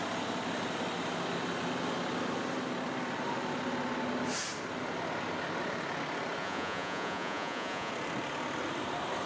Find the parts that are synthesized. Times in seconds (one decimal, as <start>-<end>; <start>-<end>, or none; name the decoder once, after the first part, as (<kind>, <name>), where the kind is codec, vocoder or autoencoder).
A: 6.4-7.9 (vocoder, Vocos)